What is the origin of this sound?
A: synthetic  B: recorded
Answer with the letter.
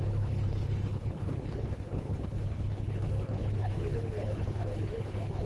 A